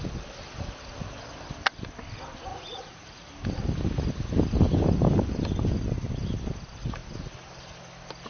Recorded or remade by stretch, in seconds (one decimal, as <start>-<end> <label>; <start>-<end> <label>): 0.0-2.5 recorded; 2.5-3.3 remade; 3.3-8.3 recorded